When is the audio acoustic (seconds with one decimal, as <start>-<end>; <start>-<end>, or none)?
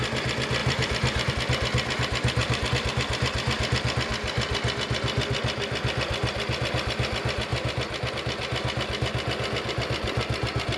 0.0-0.6; 1.3-2.4; 2.9-10.8